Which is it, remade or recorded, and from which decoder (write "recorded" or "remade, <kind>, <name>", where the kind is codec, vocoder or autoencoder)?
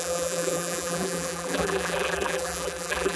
remade, vocoder, BigVGAN v2